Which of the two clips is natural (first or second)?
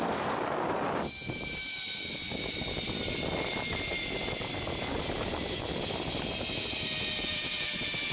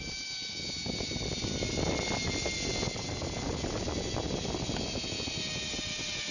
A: second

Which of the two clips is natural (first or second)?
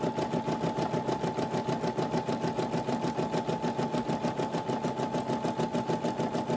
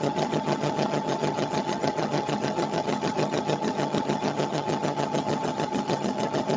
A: first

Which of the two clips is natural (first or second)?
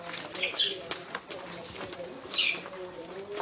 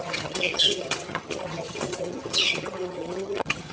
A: first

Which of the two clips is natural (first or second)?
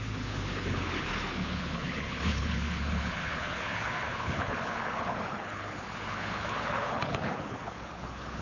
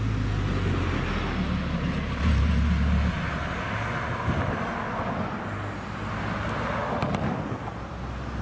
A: second